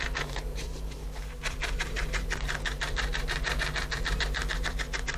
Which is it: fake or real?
fake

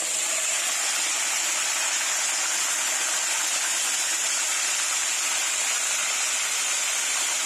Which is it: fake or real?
real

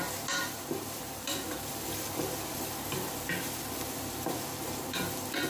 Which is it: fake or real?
fake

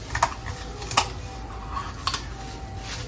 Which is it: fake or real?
real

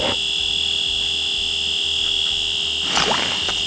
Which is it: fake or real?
real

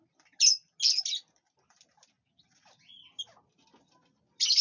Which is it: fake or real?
real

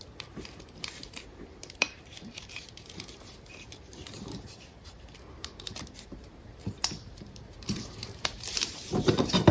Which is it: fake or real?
fake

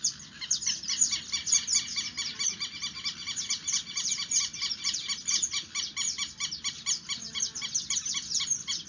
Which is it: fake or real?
real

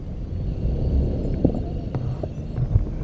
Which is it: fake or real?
fake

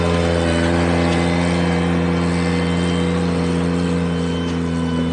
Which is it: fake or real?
real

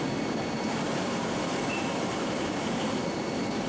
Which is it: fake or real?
fake